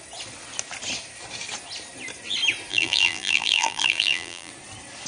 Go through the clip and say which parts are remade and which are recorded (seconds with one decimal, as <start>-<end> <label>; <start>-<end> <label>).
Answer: 0.0-2.7 recorded; 2.7-4.5 remade; 4.5-5.1 recorded